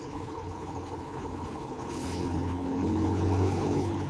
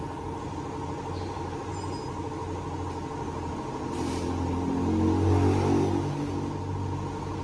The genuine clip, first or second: second